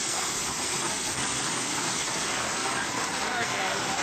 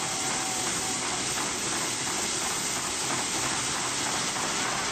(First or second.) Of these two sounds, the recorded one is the second